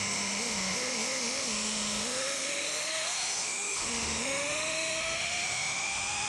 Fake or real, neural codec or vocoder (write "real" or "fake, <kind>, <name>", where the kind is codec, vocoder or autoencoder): fake, autoencoder, DAC-VAE